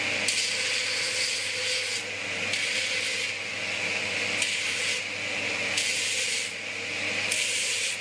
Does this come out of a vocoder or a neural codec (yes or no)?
no